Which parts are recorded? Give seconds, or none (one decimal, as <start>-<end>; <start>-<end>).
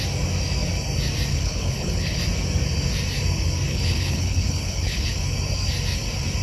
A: 0.0-1.3; 2.2-3.7; 5.1-6.4